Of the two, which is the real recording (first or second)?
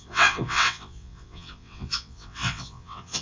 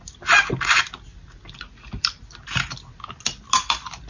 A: second